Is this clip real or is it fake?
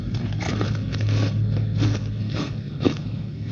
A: fake